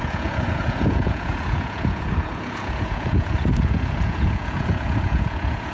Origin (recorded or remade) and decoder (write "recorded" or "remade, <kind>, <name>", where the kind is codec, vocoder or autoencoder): remade, vocoder, Vocos